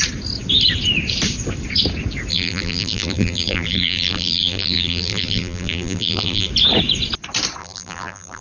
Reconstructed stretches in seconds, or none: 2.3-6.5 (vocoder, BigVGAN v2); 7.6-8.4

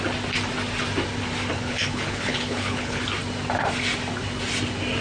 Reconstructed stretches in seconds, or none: 1.5-3.0 (codec, HILCodec)

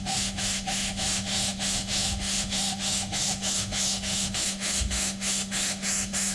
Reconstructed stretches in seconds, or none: 0.0-6.3 (autoencoder, DAC-VAE)

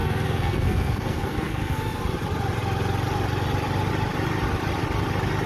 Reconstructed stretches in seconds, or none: 0.0-2.0 (codec, SNAC)

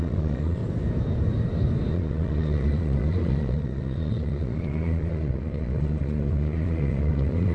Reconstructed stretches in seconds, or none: 0.0-0.6 (vocoder, Vocos); 1.9-7.5

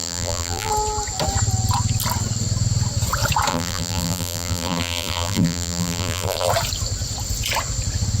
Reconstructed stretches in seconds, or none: 0.0-0.7 (vocoder, BigVGAN v2); 3.5-6.5

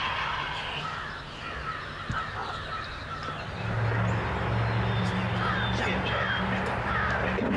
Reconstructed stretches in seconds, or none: none